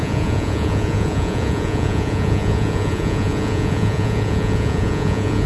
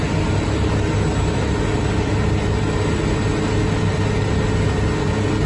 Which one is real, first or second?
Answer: second